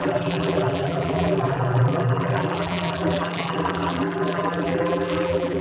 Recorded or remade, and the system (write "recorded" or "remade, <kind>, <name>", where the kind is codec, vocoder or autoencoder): remade, vocoder, BigVGAN v2